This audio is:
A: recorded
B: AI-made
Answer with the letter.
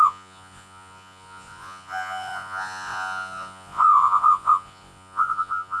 B